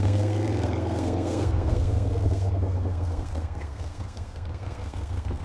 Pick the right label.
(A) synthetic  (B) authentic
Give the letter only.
A